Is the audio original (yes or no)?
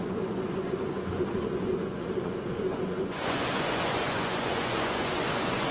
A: no